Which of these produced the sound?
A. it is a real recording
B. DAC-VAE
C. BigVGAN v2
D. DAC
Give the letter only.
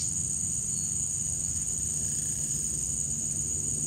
A